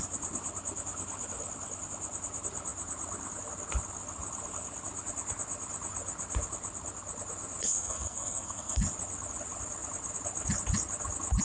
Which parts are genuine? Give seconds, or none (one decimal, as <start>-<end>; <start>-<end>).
0.0-7.6; 8.8-11.4

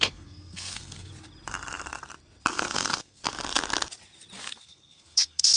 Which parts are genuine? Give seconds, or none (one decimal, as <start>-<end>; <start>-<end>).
1.1-2.5; 3.2-4.4

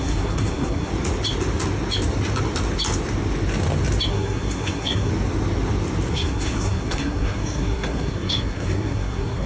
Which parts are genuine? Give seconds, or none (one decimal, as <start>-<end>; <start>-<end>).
0.9-4.1; 5.1-6.1

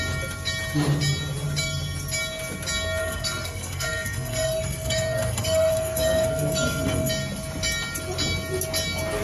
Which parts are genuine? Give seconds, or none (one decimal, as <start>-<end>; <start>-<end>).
0.0-3.0; 7.1-9.2

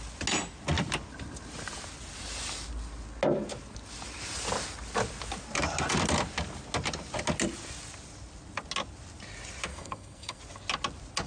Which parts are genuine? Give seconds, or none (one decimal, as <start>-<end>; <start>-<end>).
0.0-9.7; 10.4-11.3

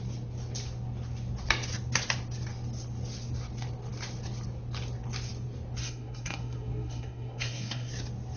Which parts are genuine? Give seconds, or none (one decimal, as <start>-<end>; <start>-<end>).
0.0-5.8; 7.9-8.4

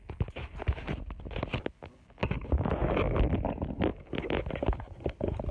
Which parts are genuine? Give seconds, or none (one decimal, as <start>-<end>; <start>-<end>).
0.0-5.5

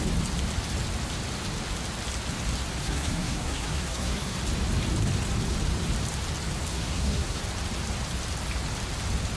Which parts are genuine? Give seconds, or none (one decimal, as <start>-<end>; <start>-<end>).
0.0-2.8; 4.4-6.7; 7.4-9.4